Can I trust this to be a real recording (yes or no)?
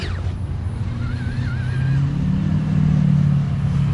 yes